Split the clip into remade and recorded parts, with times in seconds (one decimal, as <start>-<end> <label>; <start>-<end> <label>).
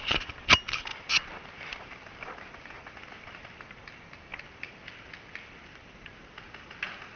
0.0-7.2 recorded